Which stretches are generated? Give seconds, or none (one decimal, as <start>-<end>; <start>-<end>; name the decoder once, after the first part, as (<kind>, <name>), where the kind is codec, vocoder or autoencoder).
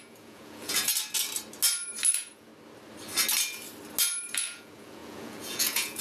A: 0.0-0.9 (vocoder, Vocos); 2.1-2.5; 4.3-6.0